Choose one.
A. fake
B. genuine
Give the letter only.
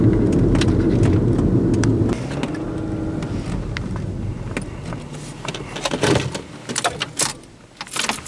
B